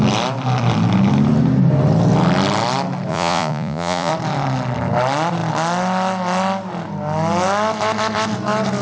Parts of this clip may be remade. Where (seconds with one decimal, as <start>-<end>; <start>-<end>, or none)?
3.1-4.1